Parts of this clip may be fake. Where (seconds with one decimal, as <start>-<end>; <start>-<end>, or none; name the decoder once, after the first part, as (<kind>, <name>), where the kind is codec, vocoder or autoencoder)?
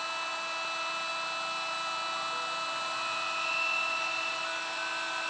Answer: none